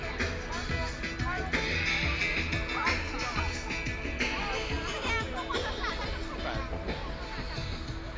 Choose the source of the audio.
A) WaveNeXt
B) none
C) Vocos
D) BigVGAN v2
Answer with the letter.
B